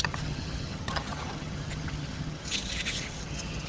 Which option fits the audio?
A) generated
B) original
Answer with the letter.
A